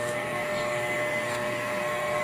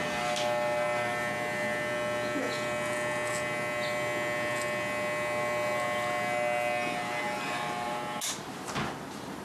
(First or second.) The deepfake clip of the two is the first